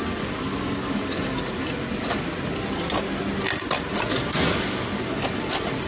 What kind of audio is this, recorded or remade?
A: recorded